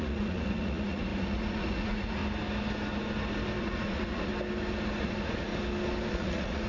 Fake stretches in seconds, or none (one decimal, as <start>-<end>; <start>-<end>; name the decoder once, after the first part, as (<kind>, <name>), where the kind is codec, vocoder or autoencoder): 0.0-2.2 (vocoder, Vocos); 3.6-4.3; 5.0-5.5; 6.1-6.7